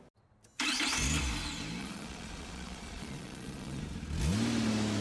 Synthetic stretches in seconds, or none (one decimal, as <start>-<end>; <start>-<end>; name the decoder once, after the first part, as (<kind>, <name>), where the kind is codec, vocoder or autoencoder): 1.8-3.8 (vocoder, Vocos)